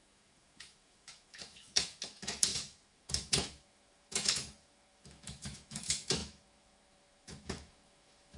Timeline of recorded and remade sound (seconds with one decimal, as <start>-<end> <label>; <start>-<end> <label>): 0.0-8.4 remade